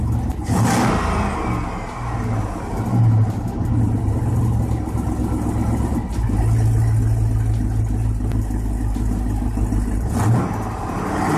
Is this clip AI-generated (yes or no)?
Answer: no